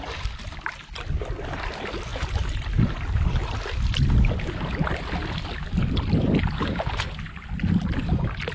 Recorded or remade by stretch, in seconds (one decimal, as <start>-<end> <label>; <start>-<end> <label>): 0.0-8.5 recorded